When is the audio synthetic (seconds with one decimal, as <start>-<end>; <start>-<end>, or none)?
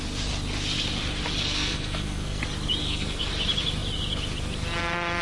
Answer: 1.4-2.4; 2.8-3.3